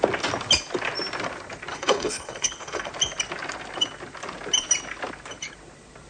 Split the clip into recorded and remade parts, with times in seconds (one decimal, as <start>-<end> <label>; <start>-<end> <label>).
0.0-1.7 recorded; 1.7-2.9 remade; 2.9-6.1 recorded